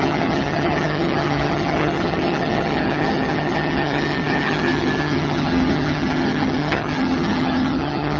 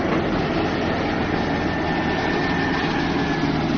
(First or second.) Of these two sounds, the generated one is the first